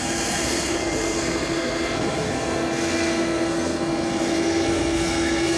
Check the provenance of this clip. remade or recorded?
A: remade